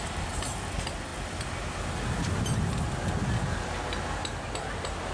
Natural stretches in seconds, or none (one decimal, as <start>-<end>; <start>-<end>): 0.0-5.1